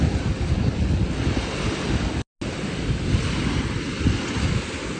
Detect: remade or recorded recorded